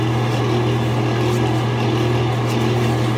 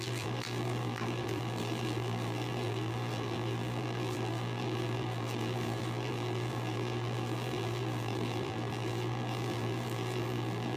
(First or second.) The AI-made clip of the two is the second